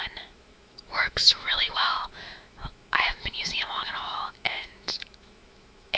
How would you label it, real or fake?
fake